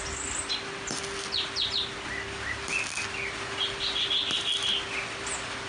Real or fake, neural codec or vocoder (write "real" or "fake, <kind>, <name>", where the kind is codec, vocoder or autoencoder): real